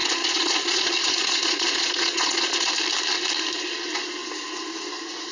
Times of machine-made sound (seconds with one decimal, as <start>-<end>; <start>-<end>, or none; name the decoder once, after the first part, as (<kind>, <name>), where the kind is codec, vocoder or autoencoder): 0.0-2.7 (vocoder, Vocos)